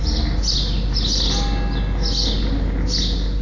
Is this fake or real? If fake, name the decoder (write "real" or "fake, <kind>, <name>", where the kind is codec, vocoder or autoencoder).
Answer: real